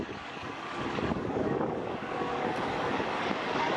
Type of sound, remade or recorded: remade